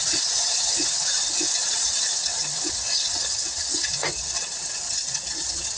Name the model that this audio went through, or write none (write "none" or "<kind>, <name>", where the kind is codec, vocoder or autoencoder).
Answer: vocoder, WaveNeXt